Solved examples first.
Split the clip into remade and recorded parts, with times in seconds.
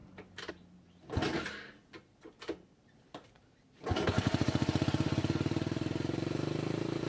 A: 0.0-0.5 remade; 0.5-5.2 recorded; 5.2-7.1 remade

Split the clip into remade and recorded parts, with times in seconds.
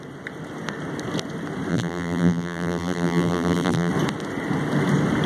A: 0.0-1.7 recorded; 1.7-3.9 remade; 3.9-5.3 recorded